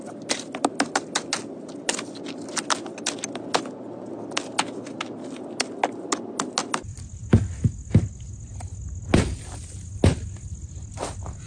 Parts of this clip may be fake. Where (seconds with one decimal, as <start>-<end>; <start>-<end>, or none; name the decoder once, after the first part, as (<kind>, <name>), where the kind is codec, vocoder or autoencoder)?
none